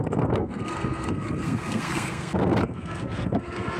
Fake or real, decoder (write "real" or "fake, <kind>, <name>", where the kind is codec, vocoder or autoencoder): fake, codec, SNAC